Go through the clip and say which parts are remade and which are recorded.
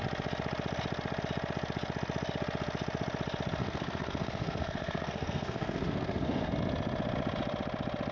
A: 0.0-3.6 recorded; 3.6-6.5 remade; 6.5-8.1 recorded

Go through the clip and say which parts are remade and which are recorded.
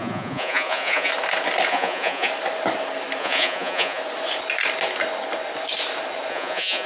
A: 0.0-1.1 remade; 1.1-1.7 recorded; 1.7-2.3 remade; 2.3-3.2 recorded; 3.2-4.0 remade; 4.0-6.3 recorded; 6.3-6.9 remade